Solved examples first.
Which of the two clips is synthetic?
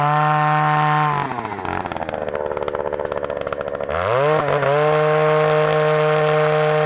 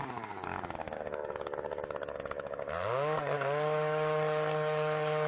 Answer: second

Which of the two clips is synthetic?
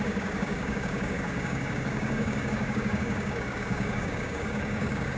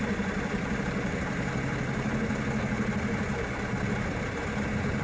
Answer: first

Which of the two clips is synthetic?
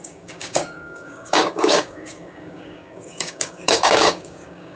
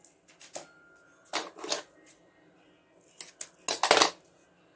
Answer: first